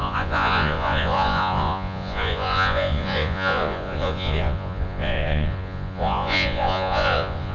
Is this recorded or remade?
remade